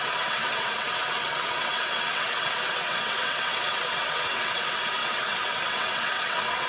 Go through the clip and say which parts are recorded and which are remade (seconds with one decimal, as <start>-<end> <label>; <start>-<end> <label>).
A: 0.0-6.7 remade